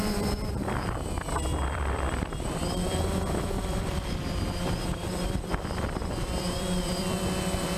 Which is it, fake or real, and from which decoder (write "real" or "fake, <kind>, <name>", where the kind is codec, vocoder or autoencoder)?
fake, vocoder, BigVGAN v2